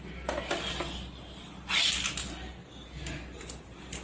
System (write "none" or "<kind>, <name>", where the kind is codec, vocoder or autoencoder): none